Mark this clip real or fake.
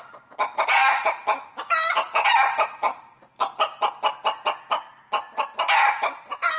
real